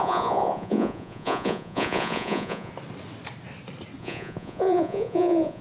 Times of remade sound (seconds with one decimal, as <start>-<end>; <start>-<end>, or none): 0.0-2.7; 4.0-5.6